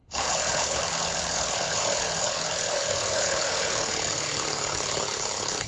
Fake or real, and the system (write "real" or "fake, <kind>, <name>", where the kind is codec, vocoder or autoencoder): fake, codec, HILCodec